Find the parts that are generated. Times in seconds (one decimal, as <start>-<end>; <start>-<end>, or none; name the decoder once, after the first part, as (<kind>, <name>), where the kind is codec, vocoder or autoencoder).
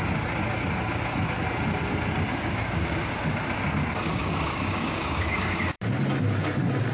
2.3-3.2 (codec, DAC); 4.2-5.8